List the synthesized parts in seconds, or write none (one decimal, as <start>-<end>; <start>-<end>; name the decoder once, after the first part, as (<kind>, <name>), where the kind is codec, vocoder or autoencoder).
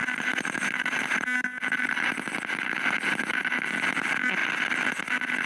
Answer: none